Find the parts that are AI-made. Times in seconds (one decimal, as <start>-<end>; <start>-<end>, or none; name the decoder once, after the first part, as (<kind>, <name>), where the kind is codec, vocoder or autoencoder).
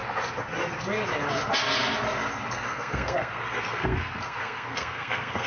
2.5-5.5 (codec, SNAC)